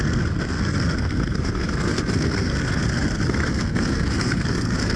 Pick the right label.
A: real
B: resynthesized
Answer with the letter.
B